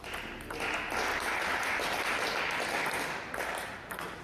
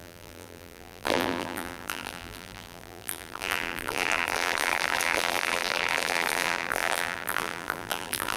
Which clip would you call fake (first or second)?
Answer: second